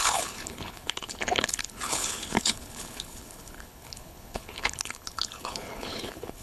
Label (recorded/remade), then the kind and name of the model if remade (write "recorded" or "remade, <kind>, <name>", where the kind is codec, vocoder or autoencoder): remade, codec, HILCodec